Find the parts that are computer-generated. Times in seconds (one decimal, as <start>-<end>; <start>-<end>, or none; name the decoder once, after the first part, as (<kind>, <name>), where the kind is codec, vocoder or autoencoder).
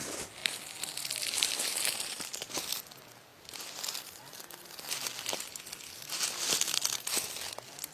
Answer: none